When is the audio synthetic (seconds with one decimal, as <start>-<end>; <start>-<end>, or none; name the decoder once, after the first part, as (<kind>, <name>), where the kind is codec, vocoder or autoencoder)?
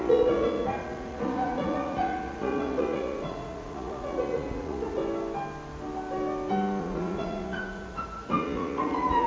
0.0-5.0 (vocoder, Vocos); 6.8-9.3